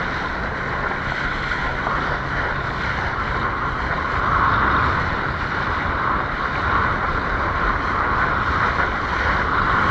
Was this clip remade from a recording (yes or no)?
no